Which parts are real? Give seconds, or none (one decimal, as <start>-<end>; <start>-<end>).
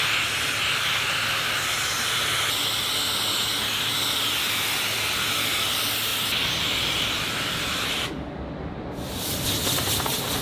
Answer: 0.0-10.4